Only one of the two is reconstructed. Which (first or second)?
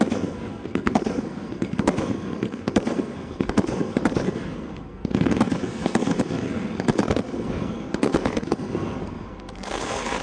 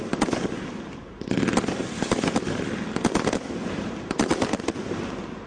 first